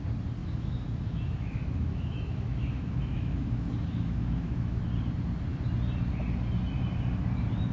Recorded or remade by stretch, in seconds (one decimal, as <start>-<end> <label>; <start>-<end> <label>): 0.0-0.4 recorded; 0.4-4.8 remade; 4.8-7.7 recorded